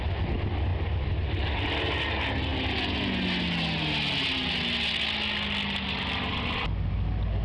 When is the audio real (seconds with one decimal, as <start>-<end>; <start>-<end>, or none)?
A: 0.0-7.4